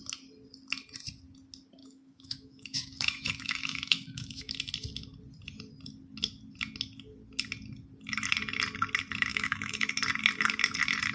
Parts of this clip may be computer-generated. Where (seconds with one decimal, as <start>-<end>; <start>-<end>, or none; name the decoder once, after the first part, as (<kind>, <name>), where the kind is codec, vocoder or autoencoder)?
1.8-4.5 (autoencoder, DAC-VAE); 9.3-9.9